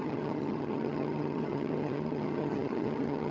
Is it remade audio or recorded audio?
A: remade